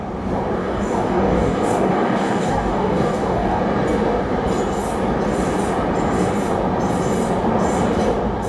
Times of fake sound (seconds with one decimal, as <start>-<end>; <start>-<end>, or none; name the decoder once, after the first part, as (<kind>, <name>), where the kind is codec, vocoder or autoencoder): 0.6-3.6 (codec, DAC)